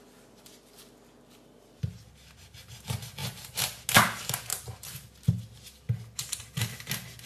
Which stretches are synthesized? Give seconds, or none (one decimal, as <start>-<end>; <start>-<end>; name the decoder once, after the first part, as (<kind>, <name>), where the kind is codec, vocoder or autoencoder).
3.2-3.8 (vocoder, BigVGAN v2)